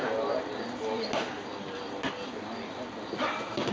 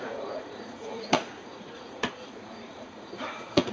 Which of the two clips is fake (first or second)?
second